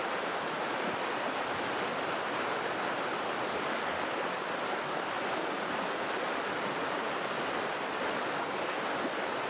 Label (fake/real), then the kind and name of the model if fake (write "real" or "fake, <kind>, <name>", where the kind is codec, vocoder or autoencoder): real